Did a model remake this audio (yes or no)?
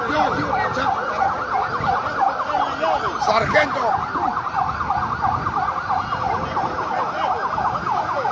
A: no